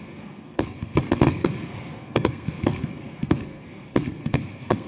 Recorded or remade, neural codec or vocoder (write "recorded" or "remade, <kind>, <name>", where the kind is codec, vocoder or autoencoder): remade, codec, SNAC